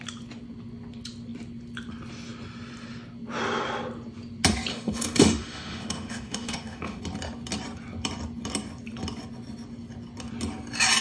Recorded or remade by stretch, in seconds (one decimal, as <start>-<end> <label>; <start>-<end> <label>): 0.0-4.7 recorded; 4.7-7.0 remade; 7.0-11.0 recorded